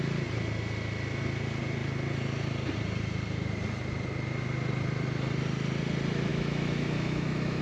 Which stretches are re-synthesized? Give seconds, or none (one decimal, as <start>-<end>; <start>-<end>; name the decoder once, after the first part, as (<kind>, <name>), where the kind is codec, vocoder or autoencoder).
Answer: 6.3-7.6 (autoencoder, DAC-VAE)